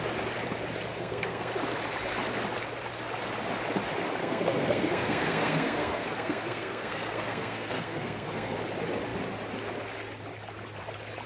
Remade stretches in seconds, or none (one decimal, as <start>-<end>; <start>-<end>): 0.9-1.5; 4.2-8.6

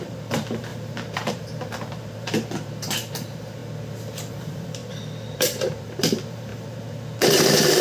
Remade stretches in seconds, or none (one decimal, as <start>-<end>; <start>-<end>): 0.0-3.6; 4.3-4.8; 5.3-7.8